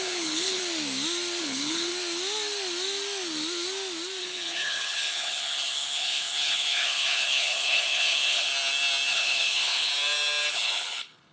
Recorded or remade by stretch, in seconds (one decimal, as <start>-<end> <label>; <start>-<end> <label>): 0.0-0.6 remade; 0.6-1.4 recorded; 1.4-1.9 remade; 1.9-4.2 recorded; 4.2-8.5 remade; 8.5-9.1 recorded; 9.1-9.9 remade; 9.9-10.5 recorded; 10.5-11.3 remade